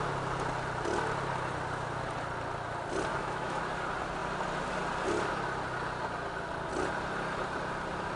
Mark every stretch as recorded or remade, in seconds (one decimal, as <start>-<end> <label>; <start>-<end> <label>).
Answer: 0.0-3.1 recorded; 3.1-3.6 remade; 3.6-8.2 recorded